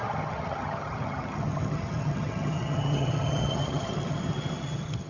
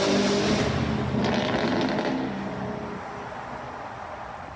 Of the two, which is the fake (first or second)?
first